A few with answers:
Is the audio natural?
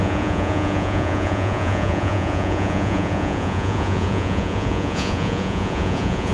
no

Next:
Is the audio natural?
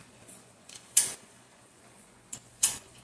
no